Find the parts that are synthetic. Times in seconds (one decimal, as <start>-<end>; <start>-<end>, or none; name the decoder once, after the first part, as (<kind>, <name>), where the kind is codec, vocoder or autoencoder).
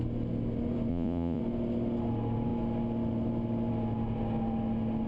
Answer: 0.9-1.4 (vocoder, Vocos)